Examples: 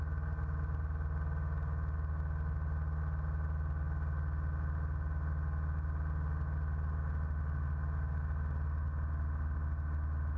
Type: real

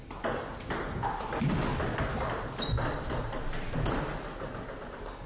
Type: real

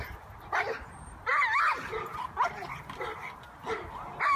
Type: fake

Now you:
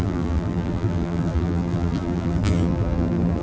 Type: fake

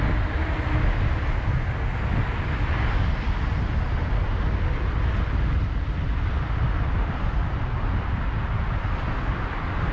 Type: real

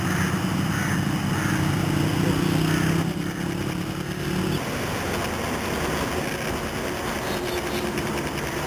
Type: real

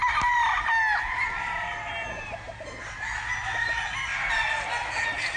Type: real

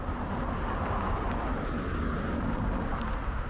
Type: real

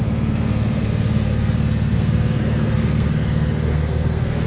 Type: fake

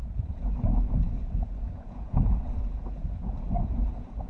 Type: fake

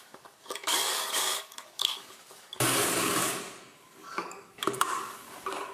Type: fake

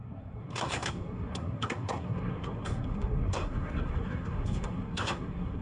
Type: fake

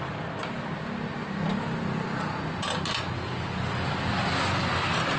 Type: real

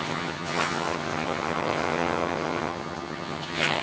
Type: fake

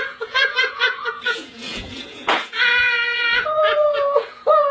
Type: fake